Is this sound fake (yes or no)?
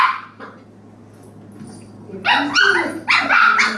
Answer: no